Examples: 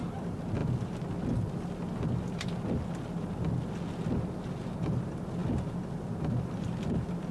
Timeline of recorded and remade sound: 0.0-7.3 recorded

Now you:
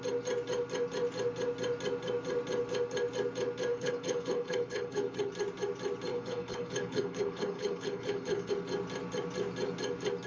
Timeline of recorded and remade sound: 0.0-3.7 recorded; 3.7-5.3 remade; 5.3-6.1 recorded; 6.1-8.5 remade; 8.5-10.3 recorded